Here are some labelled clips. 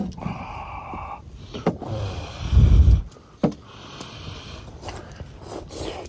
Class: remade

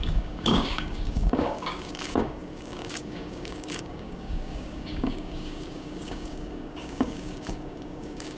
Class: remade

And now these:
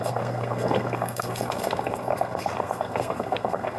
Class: remade